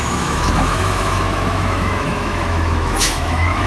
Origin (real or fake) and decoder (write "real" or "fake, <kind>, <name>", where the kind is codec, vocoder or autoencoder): fake, autoencoder, DAC-VAE